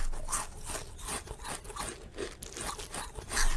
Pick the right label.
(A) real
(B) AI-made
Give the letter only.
A